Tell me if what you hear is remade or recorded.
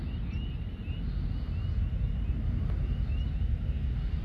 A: recorded